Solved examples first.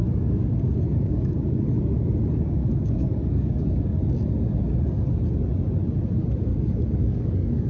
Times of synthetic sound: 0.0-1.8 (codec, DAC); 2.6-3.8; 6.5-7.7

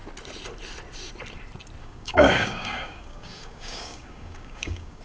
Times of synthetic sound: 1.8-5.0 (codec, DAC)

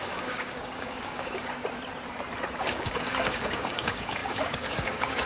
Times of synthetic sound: 0.0-1.6 (codec, DAC); 2.6-5.3

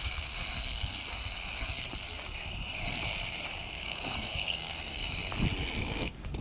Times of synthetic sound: 0.0-0.4 (codec, DAC); 3.6-5.2; 5.8-6.4

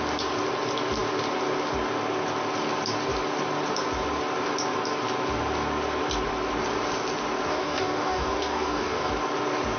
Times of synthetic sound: 7.5-9.1 (codec, DAC)